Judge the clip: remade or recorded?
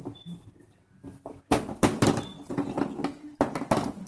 recorded